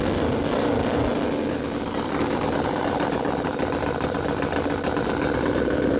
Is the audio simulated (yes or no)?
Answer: no